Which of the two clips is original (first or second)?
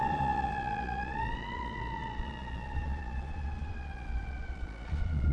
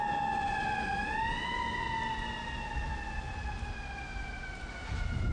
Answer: second